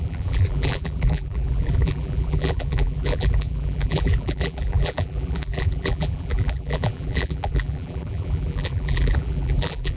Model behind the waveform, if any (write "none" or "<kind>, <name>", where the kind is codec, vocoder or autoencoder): vocoder, BigVGAN v2